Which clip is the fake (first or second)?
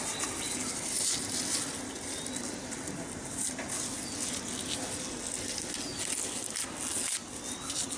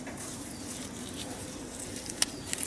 second